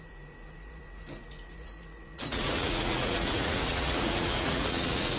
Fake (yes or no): yes